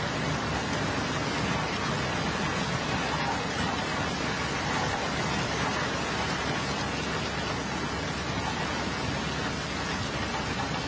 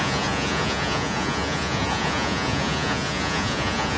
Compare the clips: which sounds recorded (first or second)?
first